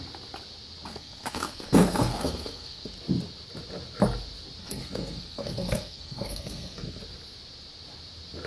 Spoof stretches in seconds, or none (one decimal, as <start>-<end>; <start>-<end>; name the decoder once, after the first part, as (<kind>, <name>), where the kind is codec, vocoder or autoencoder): 0.9-2.9 (codec, SNAC); 4.6-7.0